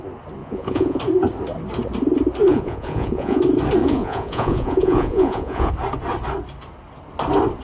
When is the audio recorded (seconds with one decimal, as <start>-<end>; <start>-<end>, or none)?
0.0-0.4; 1.0-2.5; 3.4-3.8; 5.7-7.6